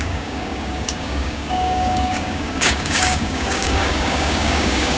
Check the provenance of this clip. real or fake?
fake